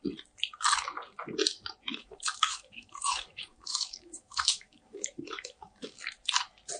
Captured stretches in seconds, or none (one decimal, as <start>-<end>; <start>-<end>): 0.0-1.9; 6.0-6.8